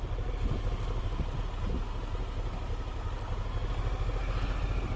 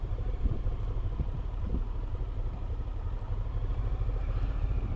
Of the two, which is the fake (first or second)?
second